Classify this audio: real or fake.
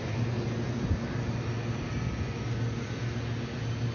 real